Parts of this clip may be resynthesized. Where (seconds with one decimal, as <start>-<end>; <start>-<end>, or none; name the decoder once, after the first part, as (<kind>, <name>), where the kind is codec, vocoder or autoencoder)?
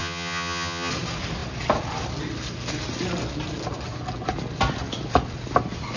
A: 0.0-0.9 (vocoder, HiFi-GAN)